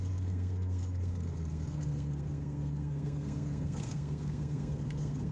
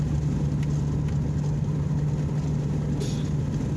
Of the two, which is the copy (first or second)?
first